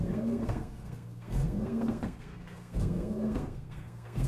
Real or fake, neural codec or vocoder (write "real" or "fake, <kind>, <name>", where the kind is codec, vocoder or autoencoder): fake, codec, SNAC